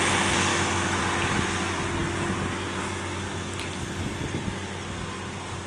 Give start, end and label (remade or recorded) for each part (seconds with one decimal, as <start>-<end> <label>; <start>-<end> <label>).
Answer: 0.0-0.5 recorded; 0.5-1.0 remade; 1.0-5.7 recorded